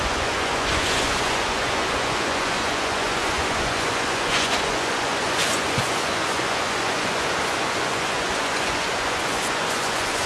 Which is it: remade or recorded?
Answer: remade